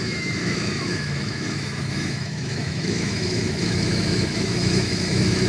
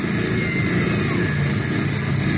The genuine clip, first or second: second